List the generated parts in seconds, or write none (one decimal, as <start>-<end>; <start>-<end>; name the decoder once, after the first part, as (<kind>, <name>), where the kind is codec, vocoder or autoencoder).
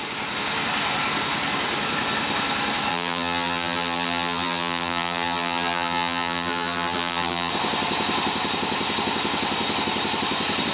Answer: 2.9-7.5 (vocoder, BigVGAN v2)